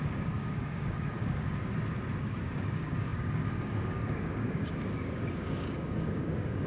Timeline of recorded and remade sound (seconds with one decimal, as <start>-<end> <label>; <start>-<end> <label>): 0.0-1.7 remade; 1.7-2.2 recorded; 2.2-6.7 remade